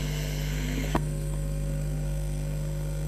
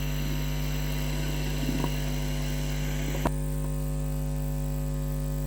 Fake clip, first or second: first